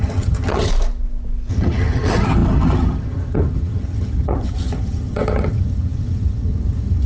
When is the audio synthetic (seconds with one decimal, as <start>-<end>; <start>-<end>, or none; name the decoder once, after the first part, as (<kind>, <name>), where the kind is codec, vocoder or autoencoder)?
0.0-0.7 (vocoder, HiFi-GAN); 1.5-7.1